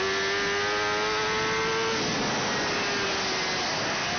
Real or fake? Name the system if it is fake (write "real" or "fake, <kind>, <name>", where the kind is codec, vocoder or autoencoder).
real